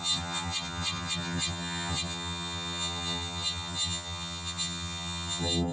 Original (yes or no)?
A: no